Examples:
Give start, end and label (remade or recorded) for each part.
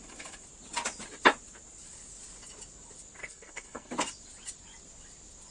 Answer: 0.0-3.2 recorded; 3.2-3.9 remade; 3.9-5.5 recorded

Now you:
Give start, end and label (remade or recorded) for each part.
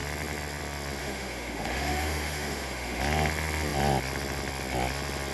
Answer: 0.0-1.0 recorded; 1.0-3.0 remade; 3.0-5.3 recorded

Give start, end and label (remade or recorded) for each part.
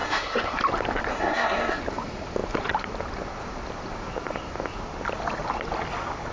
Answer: 0.0-0.6 remade; 0.6-1.1 recorded; 1.1-1.8 remade; 1.8-6.3 recorded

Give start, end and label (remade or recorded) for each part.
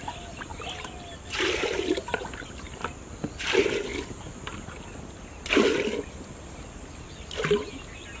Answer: 0.0-8.2 recorded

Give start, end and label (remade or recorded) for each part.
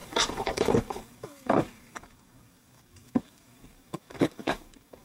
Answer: 0.0-5.0 remade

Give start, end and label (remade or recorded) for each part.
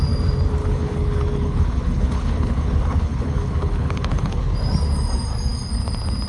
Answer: 0.0-0.6 recorded; 0.6-4.4 remade; 4.4-6.3 recorded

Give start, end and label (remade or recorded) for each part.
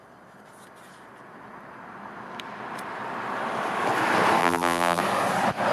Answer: 0.0-4.4 recorded; 4.4-5.0 remade; 5.0-5.7 recorded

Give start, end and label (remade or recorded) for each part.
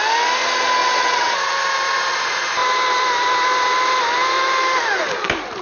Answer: 0.0-0.8 recorded; 0.8-1.5 remade; 1.5-5.6 recorded